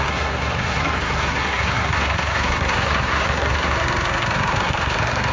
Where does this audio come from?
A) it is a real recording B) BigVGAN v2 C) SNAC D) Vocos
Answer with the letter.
C